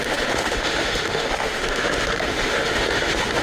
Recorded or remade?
remade